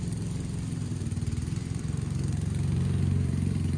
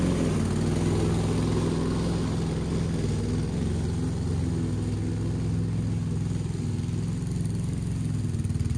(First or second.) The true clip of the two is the second